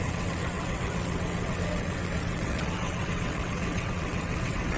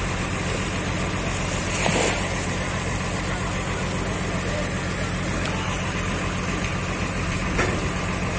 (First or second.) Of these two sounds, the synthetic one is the first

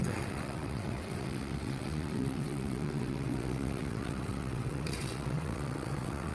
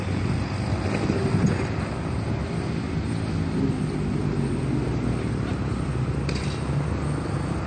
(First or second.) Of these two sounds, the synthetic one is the first